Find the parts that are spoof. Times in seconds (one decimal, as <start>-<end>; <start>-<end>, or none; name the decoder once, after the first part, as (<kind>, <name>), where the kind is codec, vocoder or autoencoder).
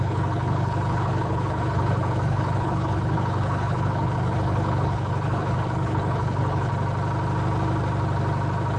0.0-6.7 (codec, HILCodec)